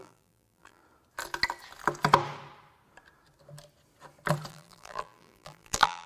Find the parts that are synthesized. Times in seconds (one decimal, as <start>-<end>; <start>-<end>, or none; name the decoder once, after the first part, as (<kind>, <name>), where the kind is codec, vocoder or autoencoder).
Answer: 0.0-0.8 (vocoder, BigVGAN v2); 4.5-6.1